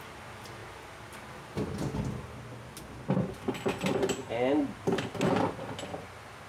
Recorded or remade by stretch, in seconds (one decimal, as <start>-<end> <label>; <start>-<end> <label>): 0.0-4.2 recorded; 4.2-5.0 remade; 5.0-6.5 recorded